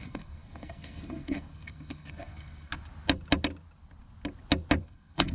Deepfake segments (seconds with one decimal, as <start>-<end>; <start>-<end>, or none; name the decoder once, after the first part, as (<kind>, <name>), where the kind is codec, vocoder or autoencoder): 0.0-2.7 (codec, SNAC); 4.8-5.3